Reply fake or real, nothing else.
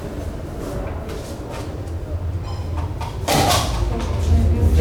real